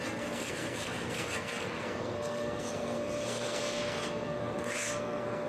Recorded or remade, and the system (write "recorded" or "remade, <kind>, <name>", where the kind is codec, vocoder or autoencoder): remade, codec, SNAC